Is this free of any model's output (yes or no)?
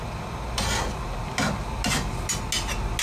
yes